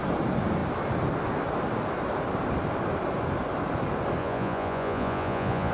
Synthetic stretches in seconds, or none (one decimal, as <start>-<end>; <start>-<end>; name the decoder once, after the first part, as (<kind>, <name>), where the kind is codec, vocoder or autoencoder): 4.2-5.7 (vocoder, Vocos)